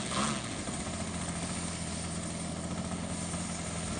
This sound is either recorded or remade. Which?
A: recorded